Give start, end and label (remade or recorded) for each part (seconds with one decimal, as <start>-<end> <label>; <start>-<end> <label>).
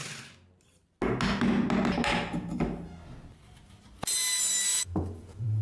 0.0-4.7 recorded; 4.7-5.6 remade